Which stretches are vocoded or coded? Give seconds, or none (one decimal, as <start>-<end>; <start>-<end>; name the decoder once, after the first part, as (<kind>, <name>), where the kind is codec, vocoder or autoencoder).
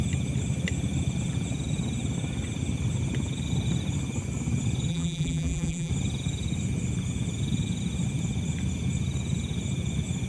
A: 4.9-5.9 (vocoder, BigVGAN v2)